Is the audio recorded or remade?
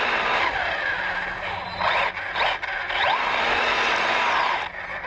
recorded